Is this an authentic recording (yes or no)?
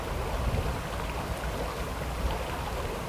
yes